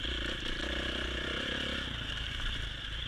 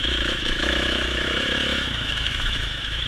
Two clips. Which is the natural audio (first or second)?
first